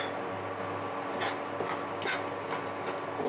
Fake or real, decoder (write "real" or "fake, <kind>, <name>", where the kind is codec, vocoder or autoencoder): real